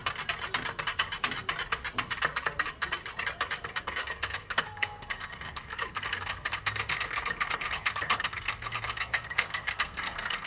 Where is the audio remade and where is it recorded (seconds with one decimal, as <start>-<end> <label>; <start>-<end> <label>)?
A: 0.0-3.8 recorded; 3.8-10.5 remade